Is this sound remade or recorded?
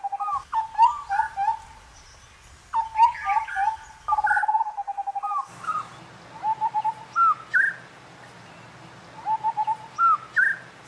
recorded